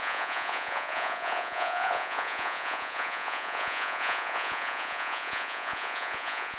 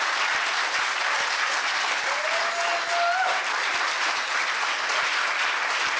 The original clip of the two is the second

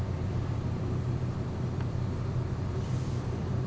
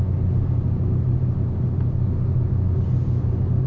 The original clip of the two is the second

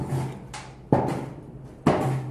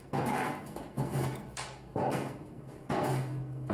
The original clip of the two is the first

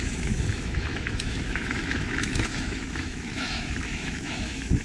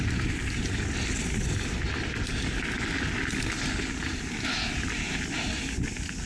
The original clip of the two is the second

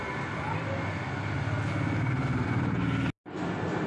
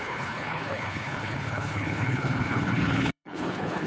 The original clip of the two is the first